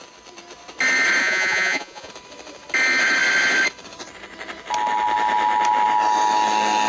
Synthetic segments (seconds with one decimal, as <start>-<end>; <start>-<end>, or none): 1.2-2.1